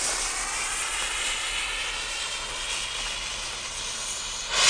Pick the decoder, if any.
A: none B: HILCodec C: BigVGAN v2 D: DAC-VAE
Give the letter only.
A